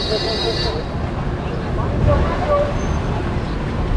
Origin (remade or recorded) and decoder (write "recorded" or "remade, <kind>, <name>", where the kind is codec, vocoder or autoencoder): recorded